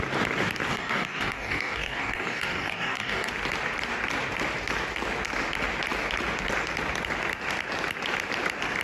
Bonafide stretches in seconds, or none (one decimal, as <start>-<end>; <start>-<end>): 0.0-0.7; 3.3-8.8